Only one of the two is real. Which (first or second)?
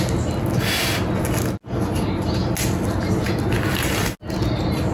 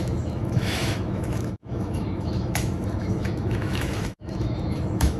first